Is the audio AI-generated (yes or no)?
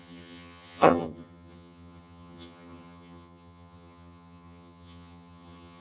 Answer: yes